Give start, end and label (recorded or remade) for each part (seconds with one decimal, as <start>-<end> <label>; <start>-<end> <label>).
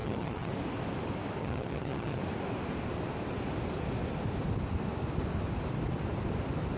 0.0-0.5 remade; 0.5-1.4 recorded; 1.4-2.2 remade; 2.2-6.8 recorded